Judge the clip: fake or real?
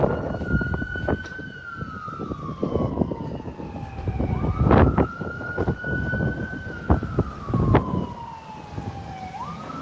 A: real